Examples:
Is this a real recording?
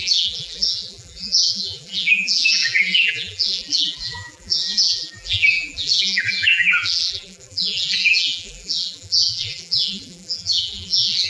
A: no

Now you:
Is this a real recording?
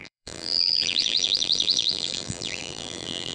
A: no